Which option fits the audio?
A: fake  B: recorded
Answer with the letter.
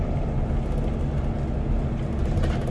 B